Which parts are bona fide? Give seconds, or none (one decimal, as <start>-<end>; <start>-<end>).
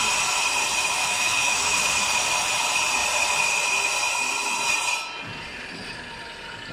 0.0-1.0; 1.9-6.7